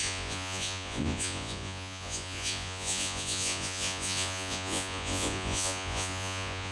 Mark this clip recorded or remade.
remade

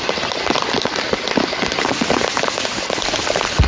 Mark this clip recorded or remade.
recorded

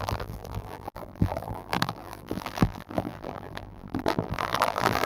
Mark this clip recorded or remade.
remade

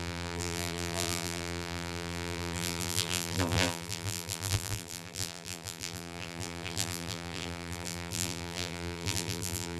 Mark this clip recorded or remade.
remade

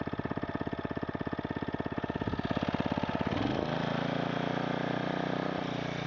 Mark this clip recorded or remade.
recorded